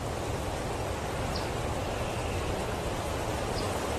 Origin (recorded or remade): recorded